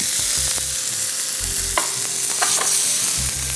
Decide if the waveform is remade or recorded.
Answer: recorded